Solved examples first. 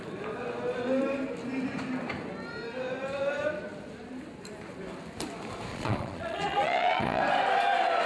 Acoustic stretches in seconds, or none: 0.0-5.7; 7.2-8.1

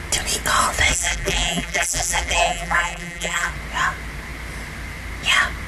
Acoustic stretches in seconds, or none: 0.0-0.9; 3.5-5.7

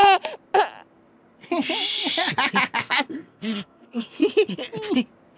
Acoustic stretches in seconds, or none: 0.0-2.8; 4.2-5.4

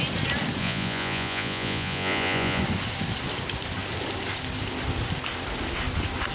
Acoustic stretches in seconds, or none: 0.0-0.6; 2.6-6.3